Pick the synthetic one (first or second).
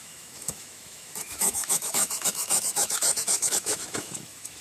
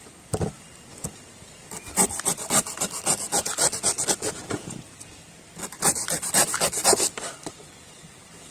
first